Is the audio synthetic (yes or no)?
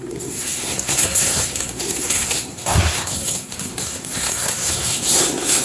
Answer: yes